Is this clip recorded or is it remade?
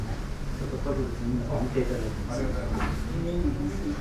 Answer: recorded